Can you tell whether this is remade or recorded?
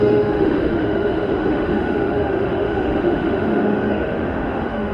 remade